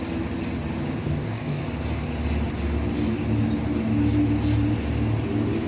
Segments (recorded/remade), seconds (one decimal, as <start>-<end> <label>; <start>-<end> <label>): 0.0-1.0 recorded; 1.0-1.6 remade; 1.6-5.7 recorded